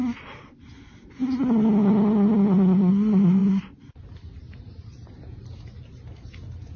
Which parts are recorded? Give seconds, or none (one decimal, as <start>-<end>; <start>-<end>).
0.0-6.8